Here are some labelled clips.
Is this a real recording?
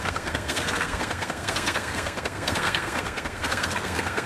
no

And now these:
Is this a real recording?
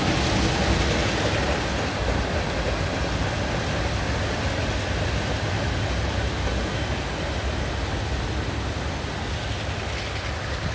yes